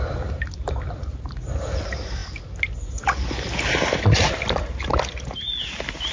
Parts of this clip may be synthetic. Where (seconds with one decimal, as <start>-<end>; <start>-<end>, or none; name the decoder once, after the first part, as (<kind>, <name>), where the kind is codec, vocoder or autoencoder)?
none